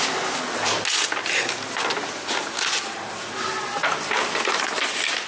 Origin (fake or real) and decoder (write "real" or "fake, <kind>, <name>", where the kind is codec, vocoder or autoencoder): real